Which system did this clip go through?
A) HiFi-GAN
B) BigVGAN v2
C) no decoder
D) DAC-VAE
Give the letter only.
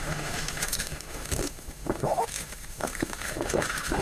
D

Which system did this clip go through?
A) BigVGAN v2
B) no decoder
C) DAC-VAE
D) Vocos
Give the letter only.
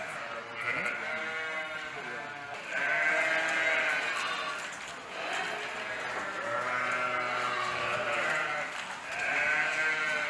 B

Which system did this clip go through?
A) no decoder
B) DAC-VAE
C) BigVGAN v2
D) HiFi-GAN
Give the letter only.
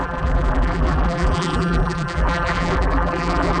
C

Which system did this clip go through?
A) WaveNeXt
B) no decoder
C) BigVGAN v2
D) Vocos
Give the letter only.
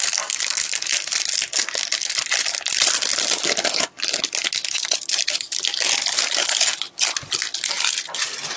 B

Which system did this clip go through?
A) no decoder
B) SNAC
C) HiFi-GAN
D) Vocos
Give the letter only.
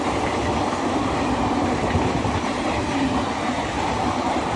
A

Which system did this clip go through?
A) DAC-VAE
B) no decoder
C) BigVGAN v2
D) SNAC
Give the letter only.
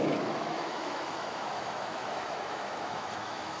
A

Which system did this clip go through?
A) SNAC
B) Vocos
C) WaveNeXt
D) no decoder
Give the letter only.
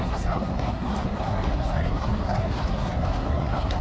A